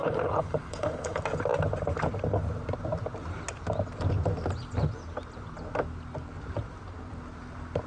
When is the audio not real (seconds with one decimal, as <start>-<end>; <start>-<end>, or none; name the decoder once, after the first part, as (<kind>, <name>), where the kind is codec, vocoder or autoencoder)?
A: 0.0-1.2 (codec, HILCodec)